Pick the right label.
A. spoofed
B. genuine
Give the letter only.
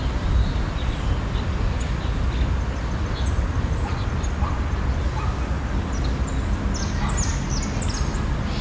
B